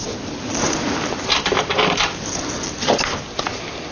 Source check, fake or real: real